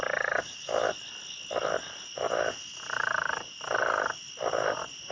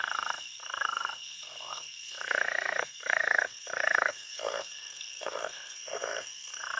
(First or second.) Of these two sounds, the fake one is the second